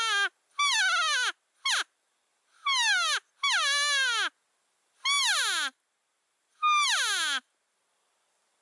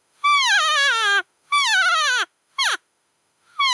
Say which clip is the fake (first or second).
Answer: second